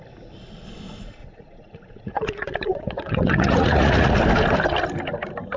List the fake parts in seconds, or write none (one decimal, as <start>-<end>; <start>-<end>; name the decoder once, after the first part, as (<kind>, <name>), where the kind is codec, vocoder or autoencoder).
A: 1.2-4.1 (vocoder, Vocos)